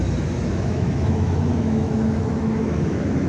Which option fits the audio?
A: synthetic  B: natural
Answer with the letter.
A